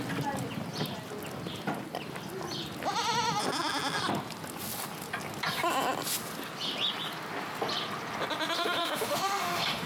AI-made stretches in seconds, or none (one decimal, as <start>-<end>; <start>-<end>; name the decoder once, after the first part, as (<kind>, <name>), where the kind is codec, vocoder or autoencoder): 8.8-9.9 (autoencoder, DAC-VAE)